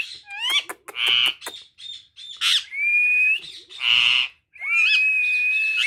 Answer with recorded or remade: recorded